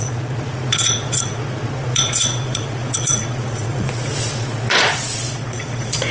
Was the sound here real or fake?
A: fake